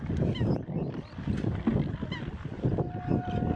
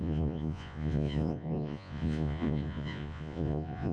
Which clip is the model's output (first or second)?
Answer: second